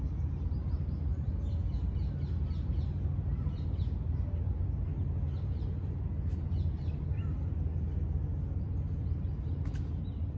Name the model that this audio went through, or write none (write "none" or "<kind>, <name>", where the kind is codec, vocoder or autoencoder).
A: none